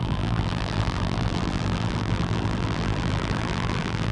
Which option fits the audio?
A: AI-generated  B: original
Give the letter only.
A